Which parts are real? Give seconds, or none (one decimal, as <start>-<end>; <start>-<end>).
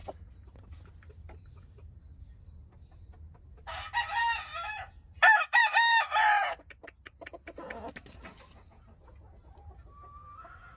0.0-10.8